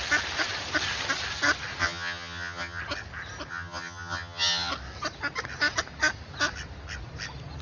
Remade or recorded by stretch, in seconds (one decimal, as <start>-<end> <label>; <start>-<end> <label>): 0.0-1.8 recorded; 1.8-2.8 remade; 2.8-3.5 recorded; 3.5-4.7 remade; 4.7-7.6 recorded